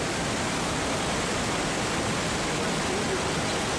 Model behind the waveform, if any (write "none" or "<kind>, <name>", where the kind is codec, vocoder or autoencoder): none